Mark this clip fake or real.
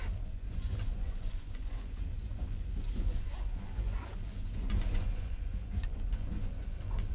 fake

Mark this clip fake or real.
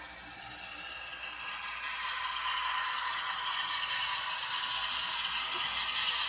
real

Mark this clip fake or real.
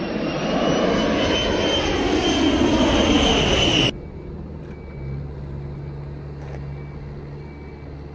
real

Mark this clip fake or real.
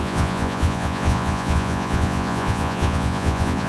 fake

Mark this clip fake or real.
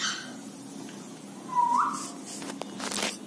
real